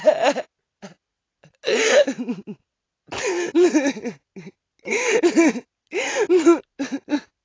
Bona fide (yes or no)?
yes